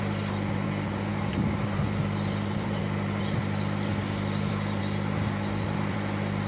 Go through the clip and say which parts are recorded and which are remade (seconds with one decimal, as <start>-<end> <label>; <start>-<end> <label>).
0.0-1.1 recorded; 1.1-2.8 remade; 2.8-6.5 recorded